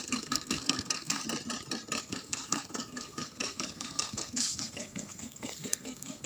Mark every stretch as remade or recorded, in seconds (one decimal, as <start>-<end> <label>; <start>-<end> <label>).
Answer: 0.0-1.2 remade; 1.2-2.0 recorded; 2.0-6.3 remade